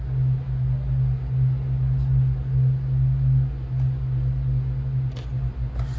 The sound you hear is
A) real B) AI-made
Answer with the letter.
A